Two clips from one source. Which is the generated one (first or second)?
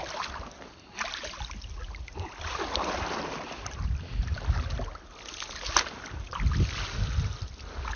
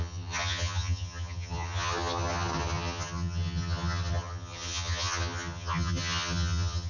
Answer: second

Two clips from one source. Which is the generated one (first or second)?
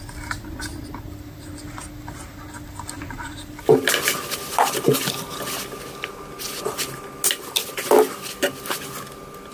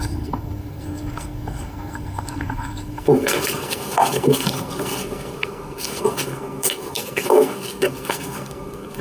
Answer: second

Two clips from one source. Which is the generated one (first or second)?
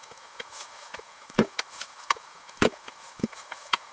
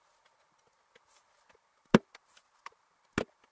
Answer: first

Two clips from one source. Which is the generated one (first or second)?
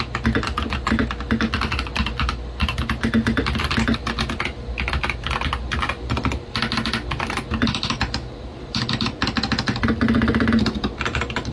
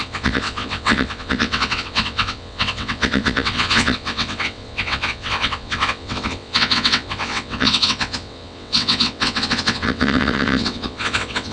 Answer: second